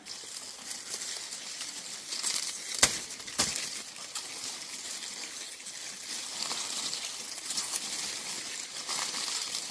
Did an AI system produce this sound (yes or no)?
no